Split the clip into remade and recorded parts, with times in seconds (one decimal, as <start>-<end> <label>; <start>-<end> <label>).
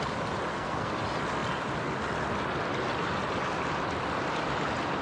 0.0-0.5 recorded; 0.5-1.0 remade; 1.0-5.0 recorded